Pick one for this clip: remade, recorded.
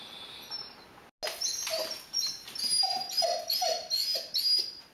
recorded